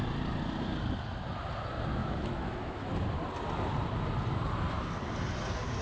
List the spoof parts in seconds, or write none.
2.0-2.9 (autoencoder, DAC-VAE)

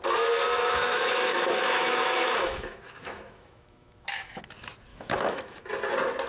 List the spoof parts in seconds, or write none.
0.6-4.4 (autoencoder, DAC-VAE); 4.9-5.7

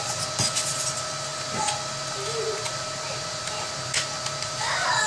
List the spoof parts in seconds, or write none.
none

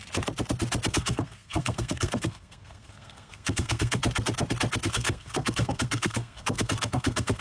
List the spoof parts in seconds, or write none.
0.9-4.0 (codec, SNAC); 4.9-7.4

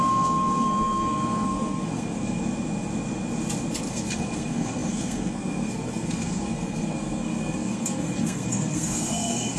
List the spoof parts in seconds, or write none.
0.0-2.4 (codec, SNAC); 3.9-9.6

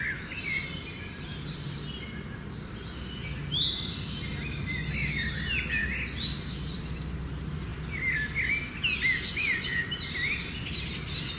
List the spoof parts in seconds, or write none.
none

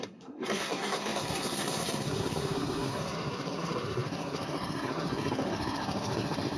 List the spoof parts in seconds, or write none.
0.0-6.6 (codec, SNAC)